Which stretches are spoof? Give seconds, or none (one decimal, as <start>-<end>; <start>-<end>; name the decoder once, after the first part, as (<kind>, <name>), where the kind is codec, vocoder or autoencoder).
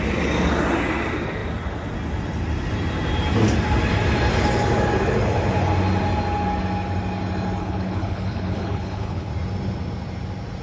7.6-9.3 (codec, HILCodec)